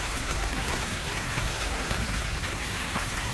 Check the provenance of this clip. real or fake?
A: fake